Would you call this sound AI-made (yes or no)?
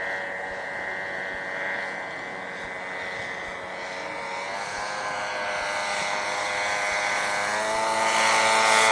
no